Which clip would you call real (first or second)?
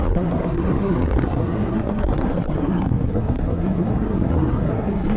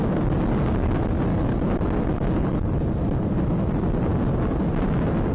second